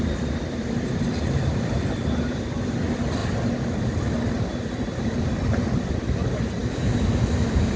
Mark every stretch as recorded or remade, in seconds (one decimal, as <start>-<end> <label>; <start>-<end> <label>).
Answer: 0.0-3.2 remade; 3.2-5.2 recorded; 5.2-7.8 remade